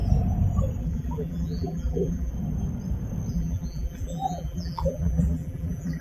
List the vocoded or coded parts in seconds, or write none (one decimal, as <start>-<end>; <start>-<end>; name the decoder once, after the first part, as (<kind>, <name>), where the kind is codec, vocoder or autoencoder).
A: 0.8-2.3 (vocoder, BigVGAN v2); 3.3-6.0